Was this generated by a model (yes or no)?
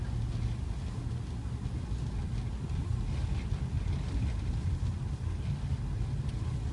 no